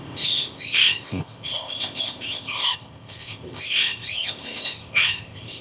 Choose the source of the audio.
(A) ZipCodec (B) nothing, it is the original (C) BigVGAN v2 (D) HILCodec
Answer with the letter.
A